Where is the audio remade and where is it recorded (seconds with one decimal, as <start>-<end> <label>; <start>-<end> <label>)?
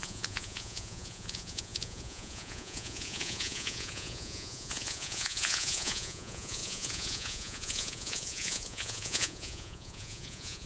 0.0-10.7 remade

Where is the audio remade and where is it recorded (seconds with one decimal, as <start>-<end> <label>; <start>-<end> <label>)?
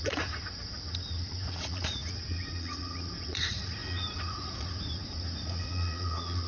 0.0-6.5 remade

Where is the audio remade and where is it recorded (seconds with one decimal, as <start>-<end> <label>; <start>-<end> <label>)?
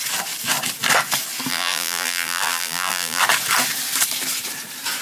0.0-1.5 recorded; 1.5-3.2 remade; 3.2-5.0 recorded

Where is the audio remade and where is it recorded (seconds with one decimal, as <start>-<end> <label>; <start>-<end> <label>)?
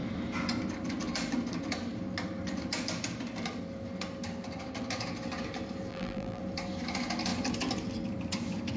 0.0-5.9 recorded; 5.9-6.4 remade; 6.4-8.8 recorded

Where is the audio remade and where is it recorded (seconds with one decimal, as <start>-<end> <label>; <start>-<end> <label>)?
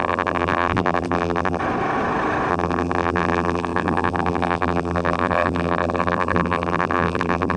0.0-1.6 remade; 1.6-2.5 recorded; 2.5-7.6 remade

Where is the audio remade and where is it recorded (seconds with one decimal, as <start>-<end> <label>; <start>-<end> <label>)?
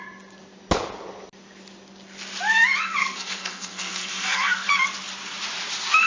0.0-3.0 recorded; 3.0-4.7 remade; 4.7-6.1 recorded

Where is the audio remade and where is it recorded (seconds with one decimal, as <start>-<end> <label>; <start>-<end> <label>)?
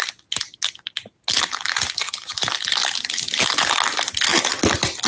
0.0-5.1 recorded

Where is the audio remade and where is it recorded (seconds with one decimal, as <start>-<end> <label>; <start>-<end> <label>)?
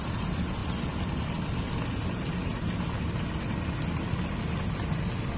0.0-5.4 recorded